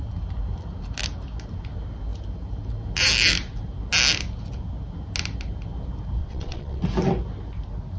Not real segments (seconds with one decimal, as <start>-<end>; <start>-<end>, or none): 6.2-6.8